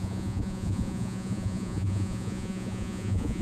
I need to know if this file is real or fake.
fake